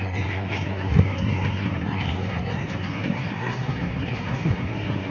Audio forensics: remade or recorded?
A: remade